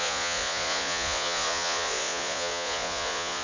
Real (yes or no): no